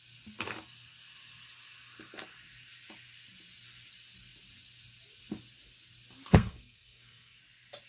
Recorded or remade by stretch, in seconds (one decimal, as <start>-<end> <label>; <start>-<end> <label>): 0.0-6.3 recorded; 6.3-7.4 remade; 7.4-7.9 recorded